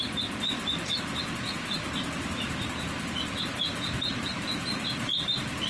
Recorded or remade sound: recorded